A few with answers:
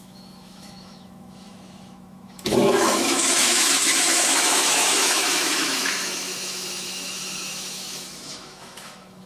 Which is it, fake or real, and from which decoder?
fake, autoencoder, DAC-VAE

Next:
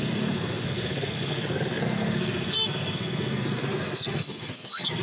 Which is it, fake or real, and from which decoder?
fake, codec, SNAC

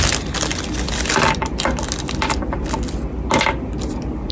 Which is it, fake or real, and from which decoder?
real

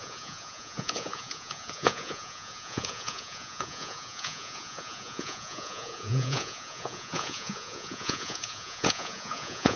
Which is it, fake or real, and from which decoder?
fake, vocoder, Vocos